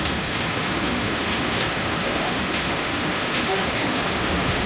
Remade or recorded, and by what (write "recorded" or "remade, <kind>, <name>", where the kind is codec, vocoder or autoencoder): remade, autoencoder, DAC-VAE